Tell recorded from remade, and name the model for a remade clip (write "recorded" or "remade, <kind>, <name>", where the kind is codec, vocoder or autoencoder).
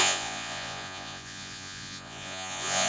remade, vocoder, Vocos